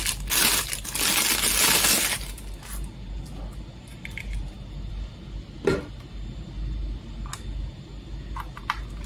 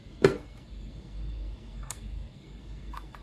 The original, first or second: first